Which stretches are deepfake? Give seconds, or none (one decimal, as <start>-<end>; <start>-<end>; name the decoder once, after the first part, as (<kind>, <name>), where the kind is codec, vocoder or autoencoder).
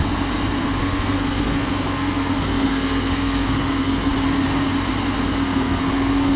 0.8-4.1 (codec, SNAC); 5.3-6.4